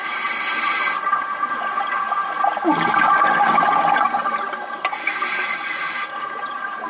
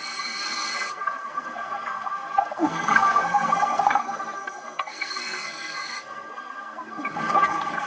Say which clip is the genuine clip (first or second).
first